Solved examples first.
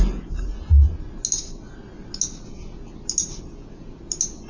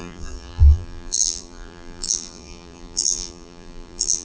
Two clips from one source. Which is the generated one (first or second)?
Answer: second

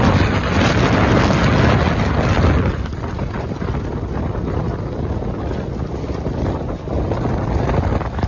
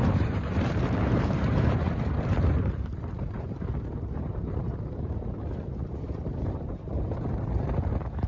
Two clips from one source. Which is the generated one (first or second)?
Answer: second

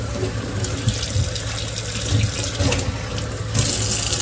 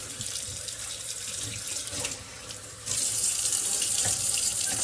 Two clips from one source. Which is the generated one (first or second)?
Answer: second